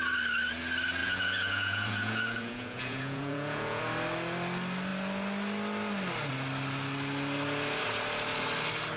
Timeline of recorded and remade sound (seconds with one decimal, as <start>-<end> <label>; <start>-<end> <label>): 0.0-1.0 recorded; 1.0-3.8 remade; 3.8-9.0 recorded